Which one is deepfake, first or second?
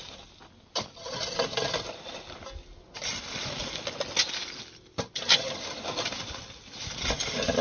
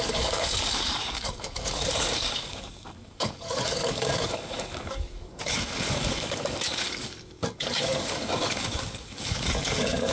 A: second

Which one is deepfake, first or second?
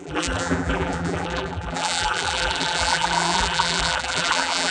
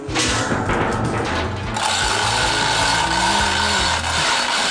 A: first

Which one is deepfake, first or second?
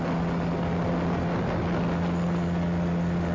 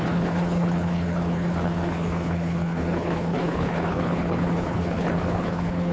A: second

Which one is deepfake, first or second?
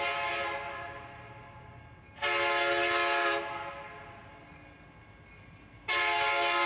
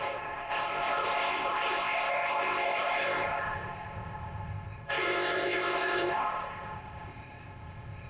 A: second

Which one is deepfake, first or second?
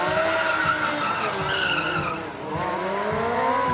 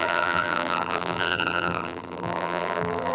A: second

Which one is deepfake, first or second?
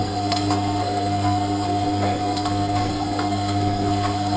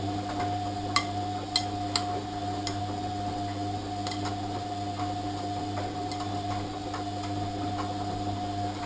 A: first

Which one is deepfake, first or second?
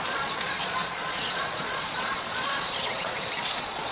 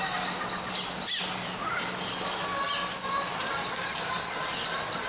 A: first